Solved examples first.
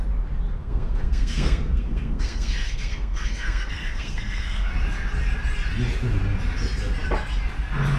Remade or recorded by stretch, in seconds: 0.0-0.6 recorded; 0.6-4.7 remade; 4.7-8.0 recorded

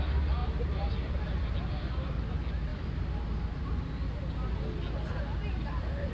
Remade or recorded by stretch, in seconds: 0.0-6.1 recorded

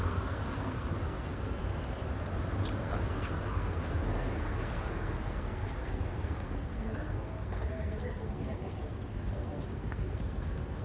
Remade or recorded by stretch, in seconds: 0.0-1.6 remade; 1.6-2.8 recorded; 2.8-10.8 remade